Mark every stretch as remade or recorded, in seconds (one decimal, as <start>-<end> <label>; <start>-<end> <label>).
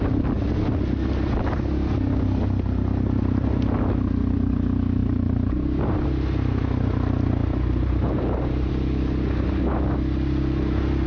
0.0-5.0 recorded; 5.0-5.8 remade; 5.8-7.4 recorded; 7.4-8.7 remade; 8.7-11.1 recorded